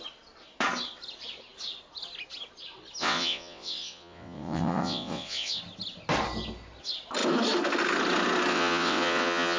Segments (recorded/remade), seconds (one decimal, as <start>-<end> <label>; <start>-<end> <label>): 0.0-3.0 recorded; 3.0-5.6 remade; 5.6-8.5 recorded; 8.5-9.6 remade